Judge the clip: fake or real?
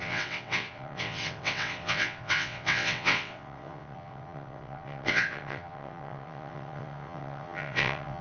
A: fake